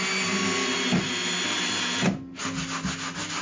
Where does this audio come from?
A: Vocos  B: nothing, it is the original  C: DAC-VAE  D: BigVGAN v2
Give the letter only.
B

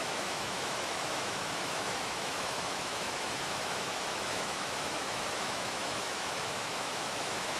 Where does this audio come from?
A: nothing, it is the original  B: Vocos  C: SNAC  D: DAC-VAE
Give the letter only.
D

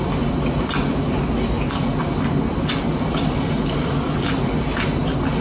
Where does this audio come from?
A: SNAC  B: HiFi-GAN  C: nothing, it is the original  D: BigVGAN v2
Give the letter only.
C